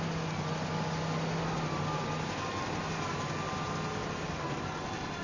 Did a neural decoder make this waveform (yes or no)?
no